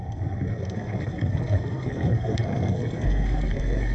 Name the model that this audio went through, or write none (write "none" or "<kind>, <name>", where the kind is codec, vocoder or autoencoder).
codec, SNAC